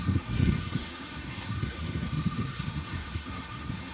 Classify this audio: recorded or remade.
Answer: remade